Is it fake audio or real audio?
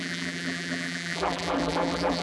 fake